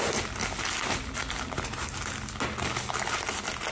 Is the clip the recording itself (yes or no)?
yes